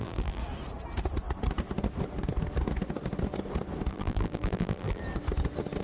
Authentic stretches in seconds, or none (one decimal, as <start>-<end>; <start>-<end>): 0.4-3.9; 5.0-5.8